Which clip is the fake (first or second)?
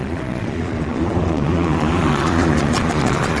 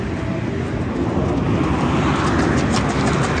first